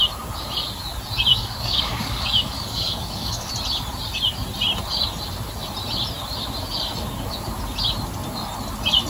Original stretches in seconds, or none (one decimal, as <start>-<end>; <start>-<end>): 0.0-1.3; 3.5-9.1